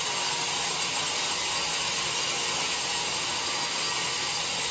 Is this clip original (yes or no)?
yes